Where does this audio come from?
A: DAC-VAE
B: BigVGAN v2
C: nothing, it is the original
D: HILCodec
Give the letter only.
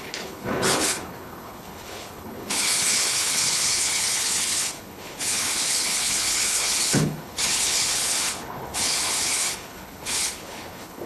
D